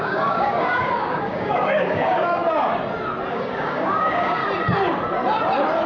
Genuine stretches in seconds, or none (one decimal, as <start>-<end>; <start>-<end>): 2.4-3.3; 4.4-5.9